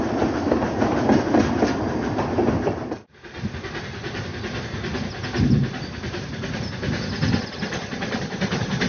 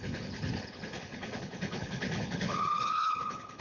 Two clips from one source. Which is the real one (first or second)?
first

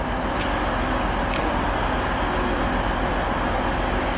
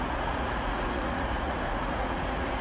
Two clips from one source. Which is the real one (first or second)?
first